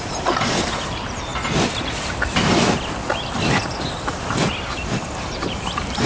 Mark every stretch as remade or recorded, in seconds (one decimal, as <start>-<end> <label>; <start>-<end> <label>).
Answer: 0.0-1.3 remade; 1.3-5.0 recorded; 5.0-6.1 remade